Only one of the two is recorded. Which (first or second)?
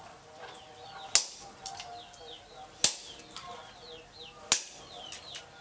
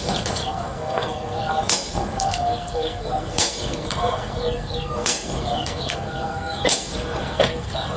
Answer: first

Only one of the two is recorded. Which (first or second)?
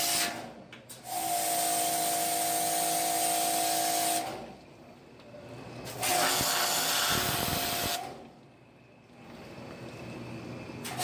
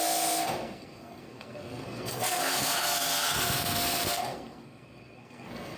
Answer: first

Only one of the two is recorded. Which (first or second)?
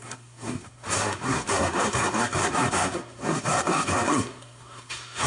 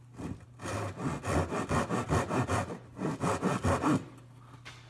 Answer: second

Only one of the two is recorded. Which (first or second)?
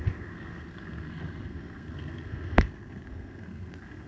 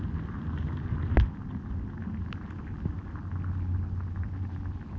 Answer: second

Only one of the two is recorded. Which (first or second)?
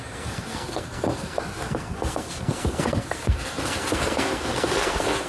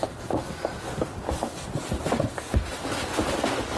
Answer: second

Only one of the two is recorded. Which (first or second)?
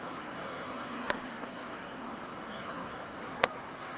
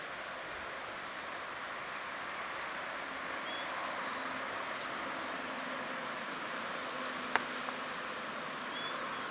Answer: second